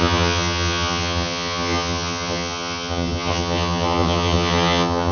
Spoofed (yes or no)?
yes